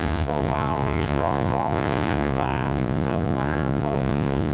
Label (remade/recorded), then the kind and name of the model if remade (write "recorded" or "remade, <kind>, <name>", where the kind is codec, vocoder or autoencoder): remade, vocoder, Vocos